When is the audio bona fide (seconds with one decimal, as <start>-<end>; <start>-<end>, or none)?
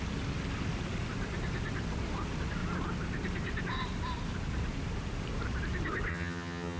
0.0-6.1